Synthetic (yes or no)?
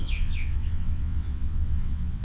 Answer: yes